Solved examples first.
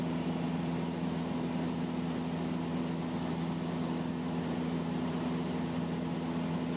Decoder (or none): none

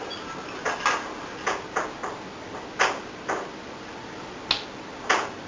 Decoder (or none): none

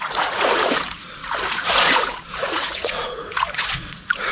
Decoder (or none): vocoder, Vocos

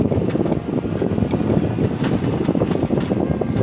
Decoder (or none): none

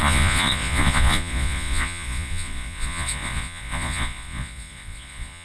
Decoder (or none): vocoder, Vocos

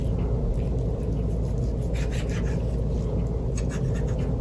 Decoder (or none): none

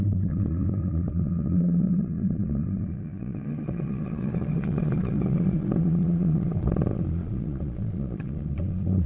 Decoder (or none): vocoder, Vocos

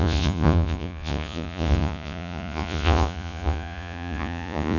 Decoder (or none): vocoder, Vocos